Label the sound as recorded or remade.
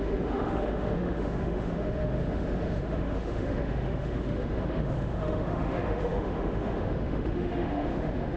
remade